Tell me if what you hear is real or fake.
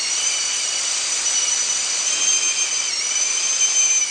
real